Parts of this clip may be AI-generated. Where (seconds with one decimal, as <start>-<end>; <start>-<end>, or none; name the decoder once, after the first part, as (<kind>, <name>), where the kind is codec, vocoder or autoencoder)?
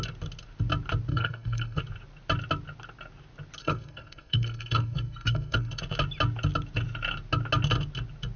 1.1-1.8 (codec, SNAC); 3.6-5.8